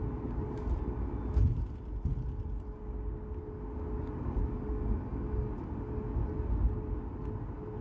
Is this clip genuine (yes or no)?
yes